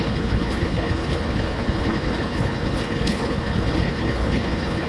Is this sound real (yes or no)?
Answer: no